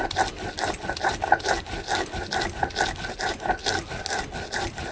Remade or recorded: recorded